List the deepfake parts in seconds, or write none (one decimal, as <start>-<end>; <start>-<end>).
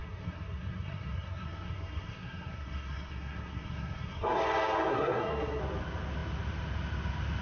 0.0-4.4; 4.9-5.6